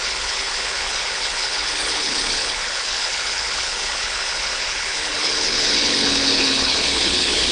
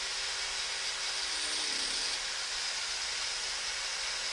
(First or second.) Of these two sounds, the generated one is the first